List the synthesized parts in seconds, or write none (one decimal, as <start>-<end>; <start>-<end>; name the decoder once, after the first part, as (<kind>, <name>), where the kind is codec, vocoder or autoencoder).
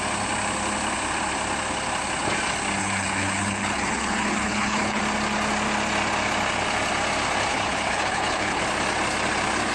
2.8-5.0 (codec, HILCodec); 7.5-8.6